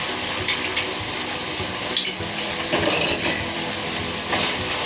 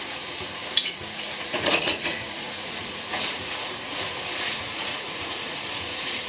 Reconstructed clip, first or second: second